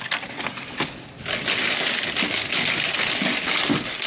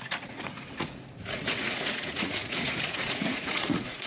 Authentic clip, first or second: first